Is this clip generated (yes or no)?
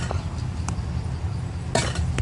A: no